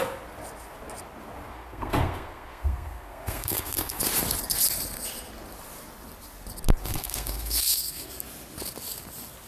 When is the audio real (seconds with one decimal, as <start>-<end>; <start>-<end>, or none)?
0.0-1.5; 4.0-6.8; 8.1-9.5